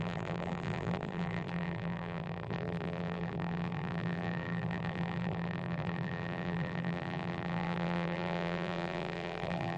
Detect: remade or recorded remade